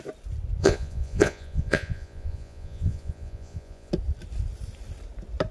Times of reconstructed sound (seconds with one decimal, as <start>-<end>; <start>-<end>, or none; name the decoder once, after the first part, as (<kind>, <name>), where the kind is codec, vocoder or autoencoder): 0.6-3.9 (vocoder, Vocos)